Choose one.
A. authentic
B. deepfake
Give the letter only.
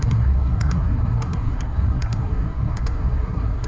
B